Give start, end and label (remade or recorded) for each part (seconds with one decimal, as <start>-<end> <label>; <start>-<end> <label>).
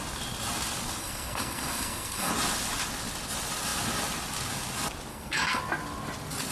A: 0.0-1.0 recorded; 1.0-2.3 remade; 2.3-5.1 recorded; 5.1-5.6 remade; 5.6-6.5 recorded